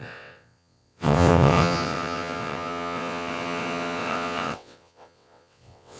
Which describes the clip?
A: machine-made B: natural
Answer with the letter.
A